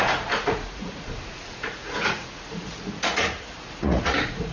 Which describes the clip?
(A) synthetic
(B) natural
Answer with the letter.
A